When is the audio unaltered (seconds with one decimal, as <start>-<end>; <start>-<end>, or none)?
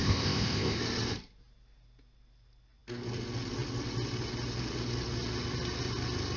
0.8-6.4